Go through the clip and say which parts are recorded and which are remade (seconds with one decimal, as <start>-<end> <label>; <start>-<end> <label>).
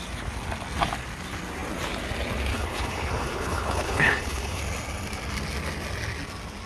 0.0-2.5 recorded; 2.5-4.6 remade; 4.6-6.7 recorded